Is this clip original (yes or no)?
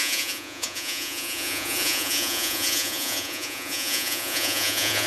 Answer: no